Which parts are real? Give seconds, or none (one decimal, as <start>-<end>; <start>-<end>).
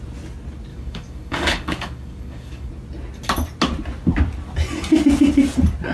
0.0-0.7; 2.7-5.9